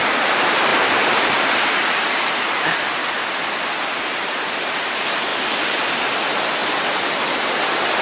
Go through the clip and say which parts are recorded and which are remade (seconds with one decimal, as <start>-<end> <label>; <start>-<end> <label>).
0.0-3.0 remade; 3.0-3.9 recorded; 3.9-5.3 remade; 5.3-5.8 recorded; 5.8-6.6 remade; 6.6-8.0 recorded